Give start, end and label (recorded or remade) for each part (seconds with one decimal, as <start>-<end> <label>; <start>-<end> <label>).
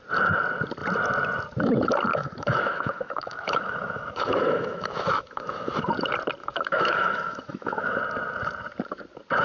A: 0.0-2.1 recorded; 2.1-5.9 remade; 5.9-6.4 recorded; 6.4-8.0 remade; 8.0-9.4 recorded